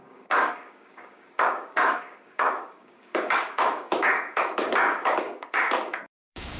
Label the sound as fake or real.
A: fake